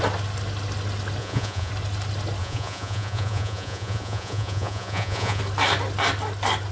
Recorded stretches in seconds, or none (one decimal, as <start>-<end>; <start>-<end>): 0.0-1.2; 1.7-2.4; 5.4-6.7